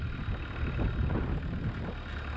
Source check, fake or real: real